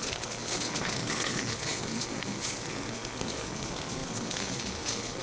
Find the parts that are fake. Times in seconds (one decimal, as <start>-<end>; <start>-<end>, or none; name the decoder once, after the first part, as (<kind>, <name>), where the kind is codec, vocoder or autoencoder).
0.0-5.2 (codec, SNAC)